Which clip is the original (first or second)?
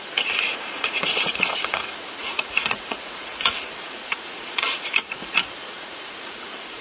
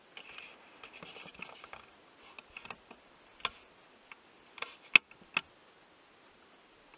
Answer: second